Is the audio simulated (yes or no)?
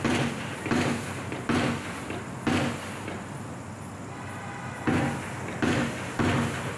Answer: no